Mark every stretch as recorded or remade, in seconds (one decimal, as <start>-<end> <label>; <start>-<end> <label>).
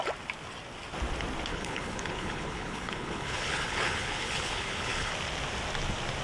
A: 0.0-1.5 recorded; 1.5-5.1 remade; 5.1-6.2 recorded